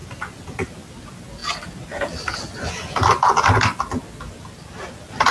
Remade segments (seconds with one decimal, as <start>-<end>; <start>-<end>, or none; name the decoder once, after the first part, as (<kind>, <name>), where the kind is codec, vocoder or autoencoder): none